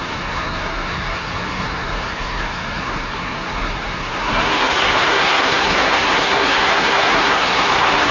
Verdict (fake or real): fake